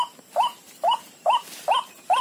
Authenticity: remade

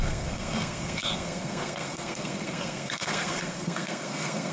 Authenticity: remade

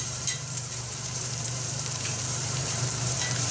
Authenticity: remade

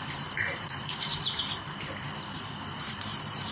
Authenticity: remade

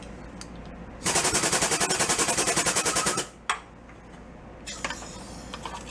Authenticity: recorded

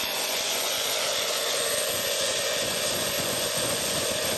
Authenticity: remade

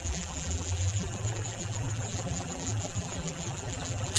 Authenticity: remade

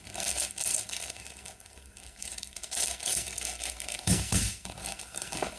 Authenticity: remade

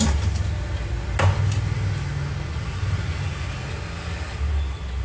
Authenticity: recorded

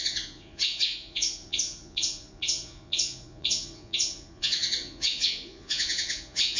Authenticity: remade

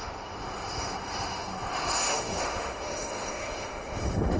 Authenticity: remade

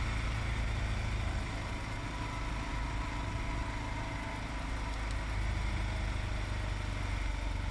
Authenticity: recorded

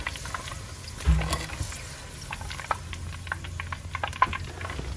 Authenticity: recorded